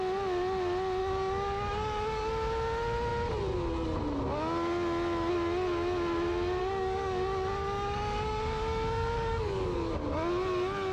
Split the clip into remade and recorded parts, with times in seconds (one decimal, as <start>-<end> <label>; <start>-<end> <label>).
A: 0.0-1.0 recorded; 1.0-2.3 remade; 2.3-6.6 recorded; 6.6-9.9 remade; 9.9-10.9 recorded